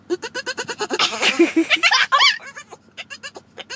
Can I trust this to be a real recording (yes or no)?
yes